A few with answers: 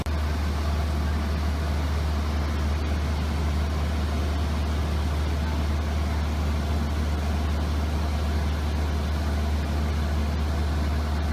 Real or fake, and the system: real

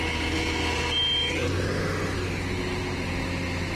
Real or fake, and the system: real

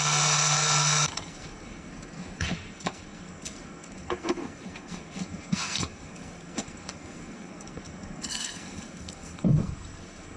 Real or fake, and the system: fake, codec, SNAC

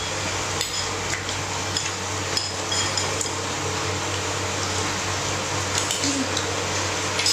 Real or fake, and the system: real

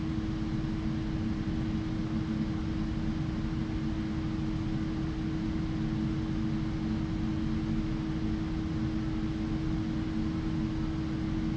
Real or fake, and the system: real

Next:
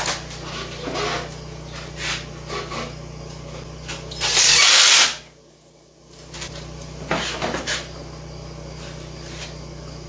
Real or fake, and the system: real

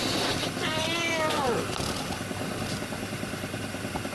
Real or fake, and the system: real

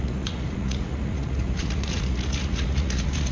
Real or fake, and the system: fake, vocoder, Vocos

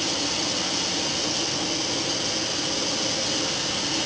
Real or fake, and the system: real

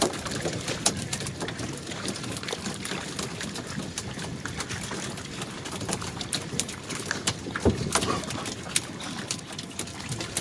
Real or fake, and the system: fake, vocoder, BigVGAN v2